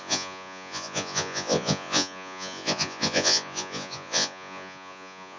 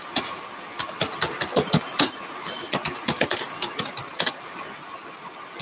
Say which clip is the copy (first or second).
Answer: first